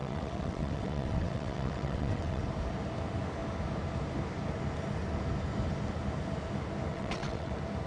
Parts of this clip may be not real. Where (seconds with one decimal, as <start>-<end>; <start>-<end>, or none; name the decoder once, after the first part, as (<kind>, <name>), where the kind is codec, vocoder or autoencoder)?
0.0-2.4 (vocoder, WaveNeXt); 6.9-7.5